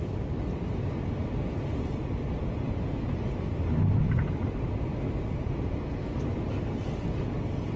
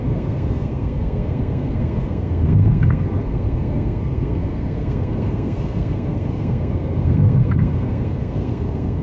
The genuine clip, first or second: first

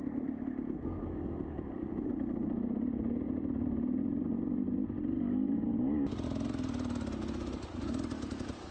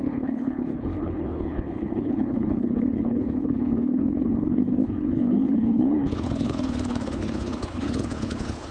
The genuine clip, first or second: first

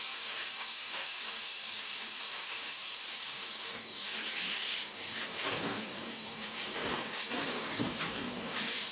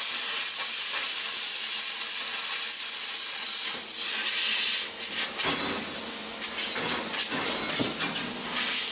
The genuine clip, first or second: second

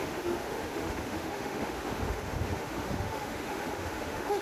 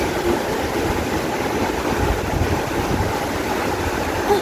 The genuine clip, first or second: second